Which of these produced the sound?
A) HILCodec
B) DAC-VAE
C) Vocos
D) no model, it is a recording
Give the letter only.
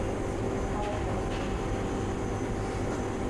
D